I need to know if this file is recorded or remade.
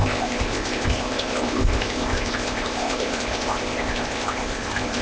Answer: remade